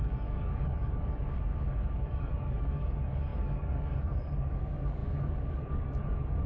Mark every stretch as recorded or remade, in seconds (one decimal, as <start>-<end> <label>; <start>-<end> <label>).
0.0-6.5 remade